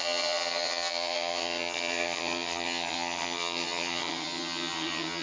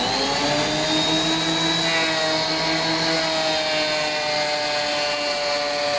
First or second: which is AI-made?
first